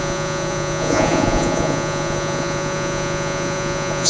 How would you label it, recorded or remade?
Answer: remade